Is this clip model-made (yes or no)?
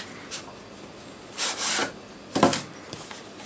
no